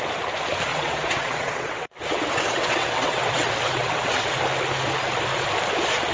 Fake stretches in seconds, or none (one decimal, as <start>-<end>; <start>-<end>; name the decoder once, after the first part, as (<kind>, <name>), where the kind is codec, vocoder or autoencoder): 0.7-4.4 (vocoder, WaveNeXt)